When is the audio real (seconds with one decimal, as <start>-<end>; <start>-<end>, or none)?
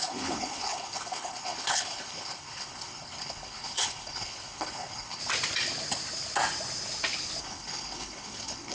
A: 5.2-7.4